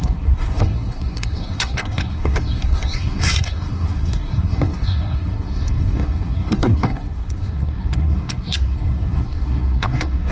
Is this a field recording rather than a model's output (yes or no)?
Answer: no